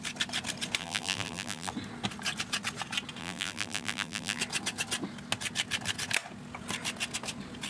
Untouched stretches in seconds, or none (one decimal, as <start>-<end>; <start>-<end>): 0.0-0.8; 1.7-3.2; 4.4-7.7